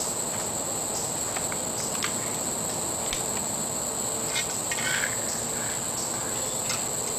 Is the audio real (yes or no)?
yes